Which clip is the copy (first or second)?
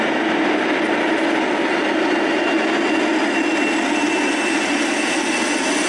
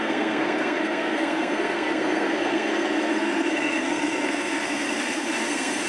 second